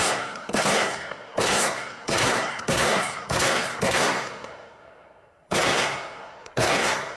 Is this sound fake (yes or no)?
yes